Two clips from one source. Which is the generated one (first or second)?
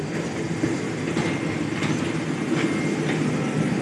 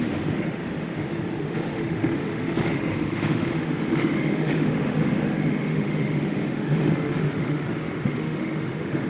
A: second